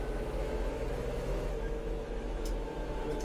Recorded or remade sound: remade